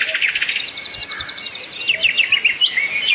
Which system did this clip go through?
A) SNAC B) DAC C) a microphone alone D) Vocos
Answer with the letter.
C